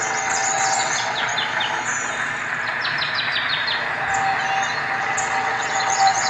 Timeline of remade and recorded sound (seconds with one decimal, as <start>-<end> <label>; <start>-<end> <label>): 0.0-1.3 remade; 1.3-5.0 recorded; 5.0-6.3 remade